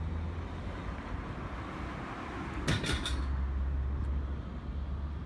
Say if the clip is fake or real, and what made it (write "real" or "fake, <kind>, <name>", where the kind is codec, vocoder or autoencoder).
real